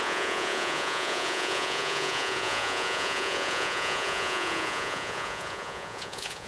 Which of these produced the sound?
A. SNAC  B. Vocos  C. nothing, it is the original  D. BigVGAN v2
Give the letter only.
B